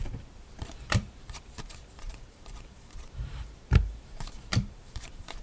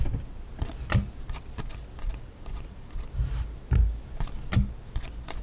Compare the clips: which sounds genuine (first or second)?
second